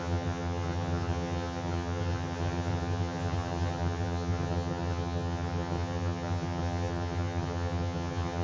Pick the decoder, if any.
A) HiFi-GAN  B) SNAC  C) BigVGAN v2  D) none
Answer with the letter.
A